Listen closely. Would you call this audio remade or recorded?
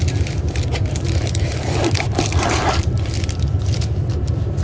remade